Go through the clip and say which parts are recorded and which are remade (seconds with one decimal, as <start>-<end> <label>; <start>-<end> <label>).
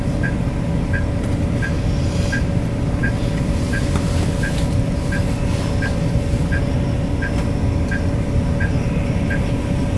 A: 0.0-10.0 recorded